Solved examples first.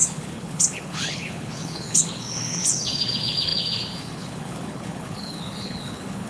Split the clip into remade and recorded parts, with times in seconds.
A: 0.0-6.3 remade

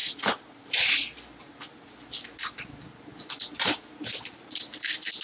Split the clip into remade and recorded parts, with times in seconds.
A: 0.0-5.2 recorded